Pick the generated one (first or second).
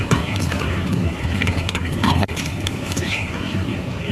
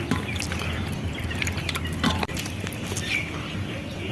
first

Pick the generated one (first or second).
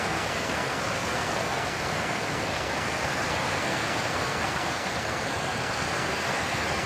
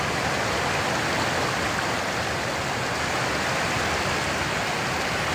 first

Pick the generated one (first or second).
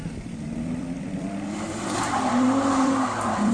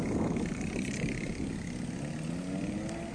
first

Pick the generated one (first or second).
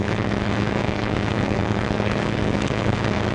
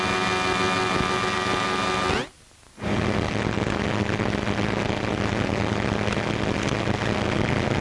first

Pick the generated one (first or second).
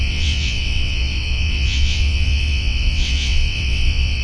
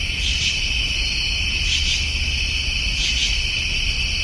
first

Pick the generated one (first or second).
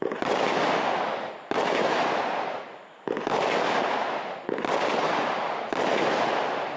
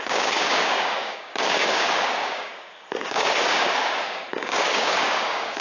second